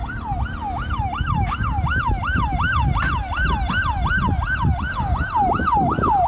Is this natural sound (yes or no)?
yes